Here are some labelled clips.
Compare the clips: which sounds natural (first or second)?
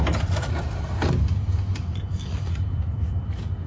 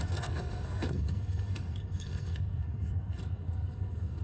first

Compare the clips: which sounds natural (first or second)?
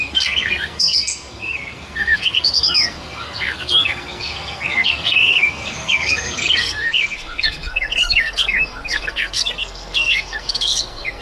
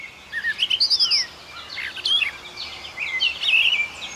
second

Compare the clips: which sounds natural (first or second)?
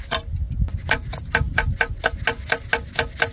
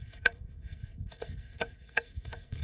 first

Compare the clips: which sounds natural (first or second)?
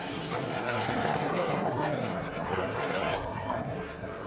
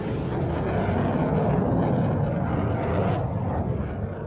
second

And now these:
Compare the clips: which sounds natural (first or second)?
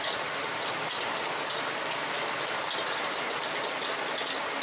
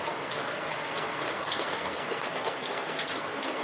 first